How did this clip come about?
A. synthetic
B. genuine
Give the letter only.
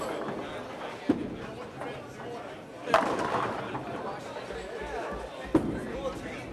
B